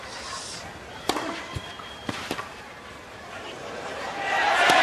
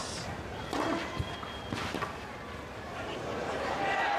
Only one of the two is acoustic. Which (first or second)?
second